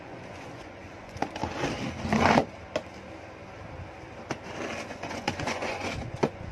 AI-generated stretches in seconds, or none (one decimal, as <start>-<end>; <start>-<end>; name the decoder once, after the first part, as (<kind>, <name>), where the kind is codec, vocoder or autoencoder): 0.0-1.4 (vocoder, Vocos); 4.9-6.5